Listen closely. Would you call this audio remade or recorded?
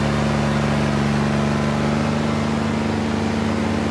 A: recorded